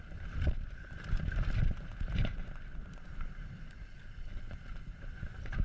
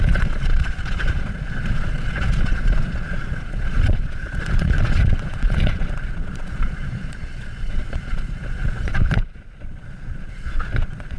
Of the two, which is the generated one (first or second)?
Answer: second